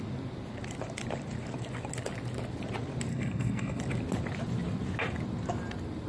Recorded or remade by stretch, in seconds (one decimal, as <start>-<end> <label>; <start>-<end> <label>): 0.0-3.1 recorded; 3.1-3.8 remade; 3.8-6.1 recorded